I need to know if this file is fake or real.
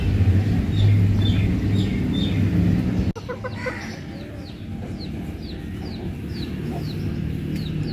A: real